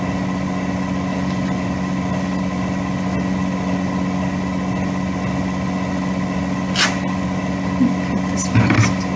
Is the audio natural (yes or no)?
yes